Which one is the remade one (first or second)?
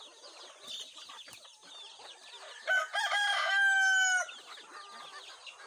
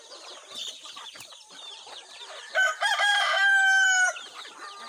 second